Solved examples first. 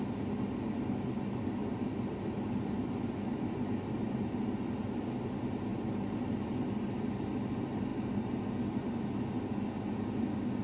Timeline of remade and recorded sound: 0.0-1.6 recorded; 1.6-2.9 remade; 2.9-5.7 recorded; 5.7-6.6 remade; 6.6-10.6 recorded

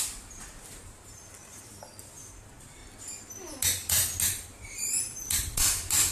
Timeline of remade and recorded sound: 0.0-2.8 remade; 2.8-4.2 recorded; 4.2-6.1 remade

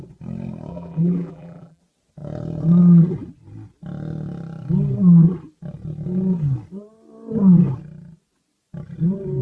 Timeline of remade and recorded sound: 0.0-0.7 recorded; 0.7-1.8 remade; 1.8-9.4 recorded

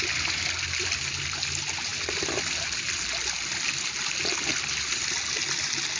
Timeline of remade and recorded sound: 0.0-6.0 recorded

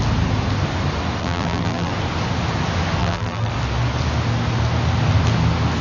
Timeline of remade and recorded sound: 0.0-1.2 recorded; 1.2-1.9 remade; 1.9-3.0 recorded; 3.0-3.5 remade; 3.5-5.8 recorded

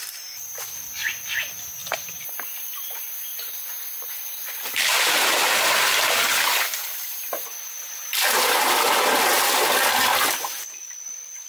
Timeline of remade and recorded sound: 0.0-3.3 remade; 3.3-4.1 recorded; 4.1-11.5 remade

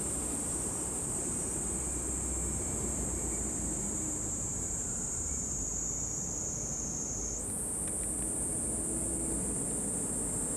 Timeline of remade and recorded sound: 0.0-5.7 remade; 5.7-10.6 recorded